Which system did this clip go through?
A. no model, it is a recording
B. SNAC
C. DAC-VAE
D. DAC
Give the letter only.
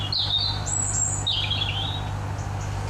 A